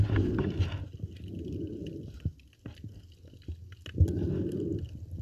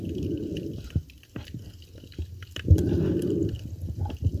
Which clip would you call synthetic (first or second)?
second